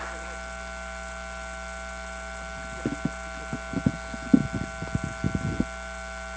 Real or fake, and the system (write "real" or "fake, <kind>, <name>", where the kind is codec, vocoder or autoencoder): real